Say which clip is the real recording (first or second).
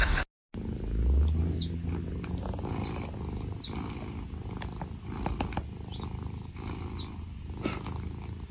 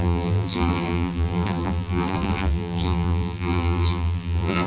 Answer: first